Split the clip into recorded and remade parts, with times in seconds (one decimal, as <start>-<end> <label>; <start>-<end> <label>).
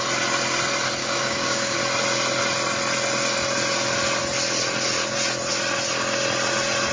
0.0-1.0 recorded; 1.0-1.8 remade; 1.8-6.9 recorded